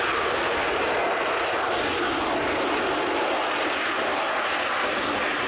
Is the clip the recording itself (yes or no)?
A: yes